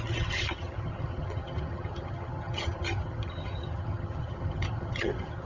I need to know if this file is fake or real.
fake